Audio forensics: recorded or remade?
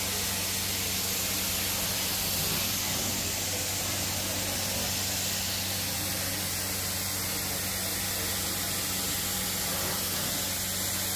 recorded